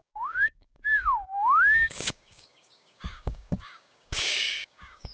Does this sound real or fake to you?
fake